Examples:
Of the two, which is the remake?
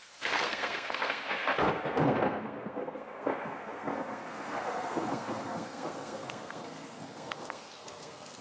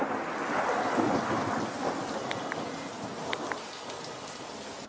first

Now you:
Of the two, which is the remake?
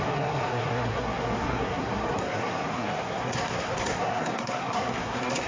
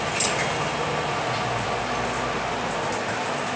first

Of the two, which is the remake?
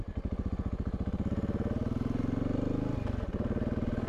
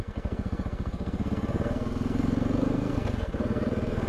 second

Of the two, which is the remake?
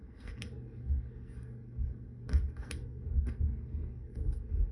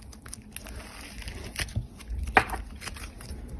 first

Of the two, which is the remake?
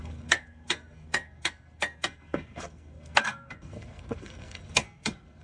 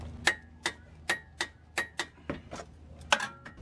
first